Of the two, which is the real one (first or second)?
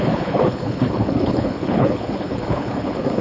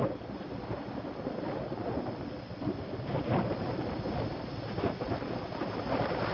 second